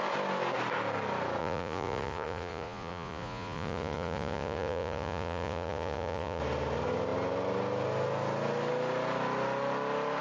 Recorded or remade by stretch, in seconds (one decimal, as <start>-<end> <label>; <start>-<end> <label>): 0.0-1.4 recorded; 1.4-6.4 remade; 6.4-10.2 recorded